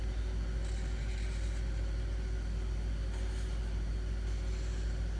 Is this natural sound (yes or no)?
yes